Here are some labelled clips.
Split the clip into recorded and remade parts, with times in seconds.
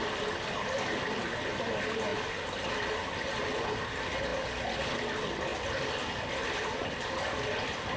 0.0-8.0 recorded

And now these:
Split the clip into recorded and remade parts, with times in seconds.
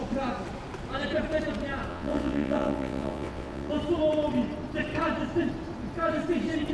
0.0-1.9 recorded; 1.9-3.7 remade; 3.7-6.7 recorded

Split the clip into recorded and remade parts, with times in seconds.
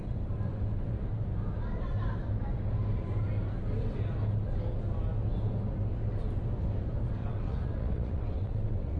0.0-7.2 recorded; 7.2-9.0 remade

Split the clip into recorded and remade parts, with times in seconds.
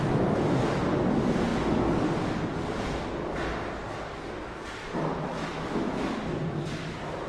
0.0-5.3 recorded; 5.3-6.2 remade; 6.2-7.3 recorded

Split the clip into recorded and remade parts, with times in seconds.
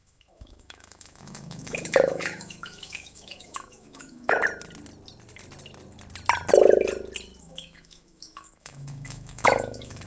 0.0-4.4 remade; 4.4-7.4 recorded; 7.4-10.1 remade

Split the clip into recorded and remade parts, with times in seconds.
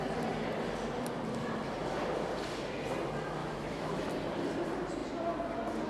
0.0-3.4 recorded; 3.4-4.1 remade; 4.1-5.9 recorded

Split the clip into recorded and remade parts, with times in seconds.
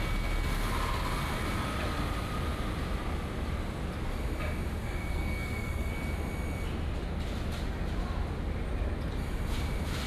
0.0-4.8 recorded; 4.8-5.9 remade; 5.9-10.1 recorded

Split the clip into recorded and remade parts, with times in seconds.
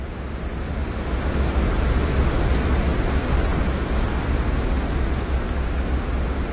0.0-6.5 recorded